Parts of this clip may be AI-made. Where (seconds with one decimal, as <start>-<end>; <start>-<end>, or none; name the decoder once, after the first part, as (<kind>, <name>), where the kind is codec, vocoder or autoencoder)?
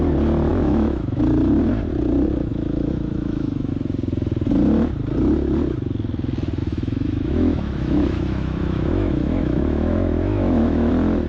0.5-1.2 (autoencoder, DAC-VAE); 2.5-3.7; 6.6-10.9